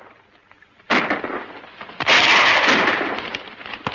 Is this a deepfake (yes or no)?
no